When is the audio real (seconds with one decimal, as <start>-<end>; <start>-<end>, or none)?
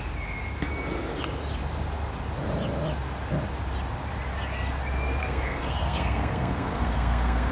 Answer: 0.0-5.2